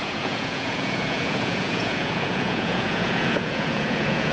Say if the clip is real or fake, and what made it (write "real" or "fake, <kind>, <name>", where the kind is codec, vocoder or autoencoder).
fake, vocoder, Vocos